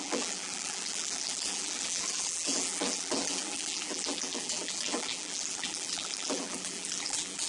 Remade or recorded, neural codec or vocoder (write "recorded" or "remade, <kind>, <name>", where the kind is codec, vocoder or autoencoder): remade, vocoder, BigVGAN v2